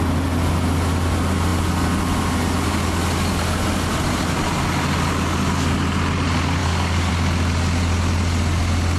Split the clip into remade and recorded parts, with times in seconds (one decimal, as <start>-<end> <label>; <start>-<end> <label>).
0.0-6.6 recorded; 6.6-7.1 remade; 7.1-9.0 recorded